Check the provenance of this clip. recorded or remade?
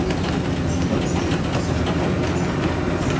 recorded